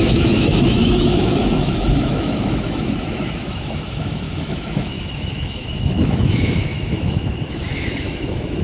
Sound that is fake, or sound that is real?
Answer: fake